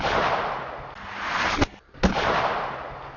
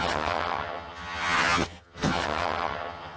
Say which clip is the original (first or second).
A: first